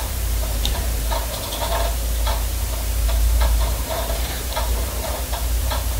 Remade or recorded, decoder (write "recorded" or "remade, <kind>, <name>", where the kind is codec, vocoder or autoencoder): remade, vocoder, BigVGAN v2